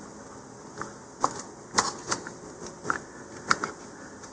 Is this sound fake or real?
real